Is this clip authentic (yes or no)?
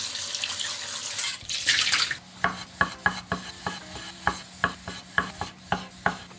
yes